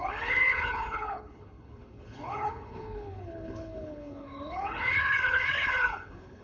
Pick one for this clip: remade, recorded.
remade